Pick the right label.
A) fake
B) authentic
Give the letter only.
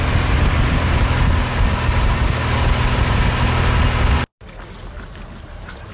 B